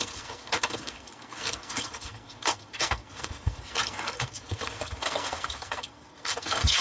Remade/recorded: remade